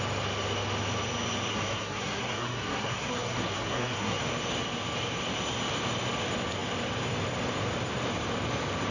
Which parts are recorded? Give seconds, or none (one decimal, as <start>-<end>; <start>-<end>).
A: 0.0-1.5; 4.2-8.9